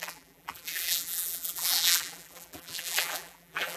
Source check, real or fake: fake